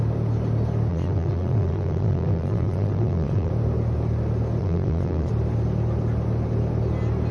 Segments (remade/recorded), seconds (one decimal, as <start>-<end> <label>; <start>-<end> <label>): 0.0-0.9 recorded; 0.9-3.5 remade; 3.5-4.6 recorded; 4.6-5.3 remade; 5.3-7.3 recorded